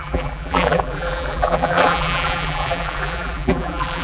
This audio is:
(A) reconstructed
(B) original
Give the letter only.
A